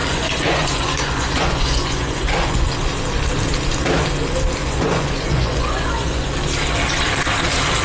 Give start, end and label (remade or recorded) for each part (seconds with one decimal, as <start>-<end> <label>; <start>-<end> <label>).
0.0-2.7 remade; 2.7-4.6 recorded; 4.6-6.3 remade; 6.3-7.8 recorded